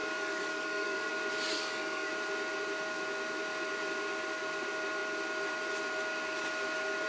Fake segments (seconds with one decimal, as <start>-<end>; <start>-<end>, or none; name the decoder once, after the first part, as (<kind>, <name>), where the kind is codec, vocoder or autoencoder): 0.0-1.1 (codec, DAC); 1.5-2.1